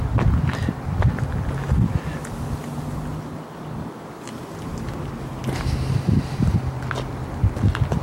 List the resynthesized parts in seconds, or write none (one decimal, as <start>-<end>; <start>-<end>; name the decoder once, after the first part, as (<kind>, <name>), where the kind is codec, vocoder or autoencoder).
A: none